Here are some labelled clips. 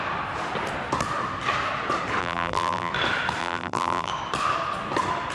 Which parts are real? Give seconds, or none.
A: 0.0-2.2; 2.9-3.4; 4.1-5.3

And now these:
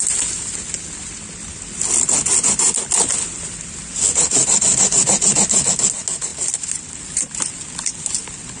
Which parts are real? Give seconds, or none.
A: 0.0-8.6

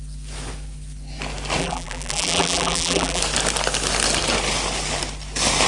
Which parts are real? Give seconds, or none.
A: 0.0-1.6; 3.2-5.7

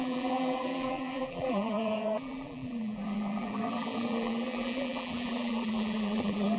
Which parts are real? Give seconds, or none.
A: none

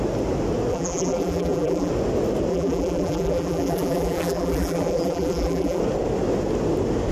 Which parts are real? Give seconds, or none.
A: 0.0-0.7; 1.9-2.5; 5.8-7.1